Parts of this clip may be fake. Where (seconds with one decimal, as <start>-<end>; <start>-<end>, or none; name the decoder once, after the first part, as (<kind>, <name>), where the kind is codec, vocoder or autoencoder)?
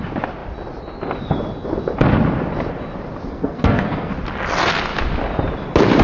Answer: 3.3-4.1 (codec, SNAC)